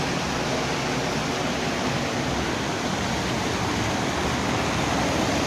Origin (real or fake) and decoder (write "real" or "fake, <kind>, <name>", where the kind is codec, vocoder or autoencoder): real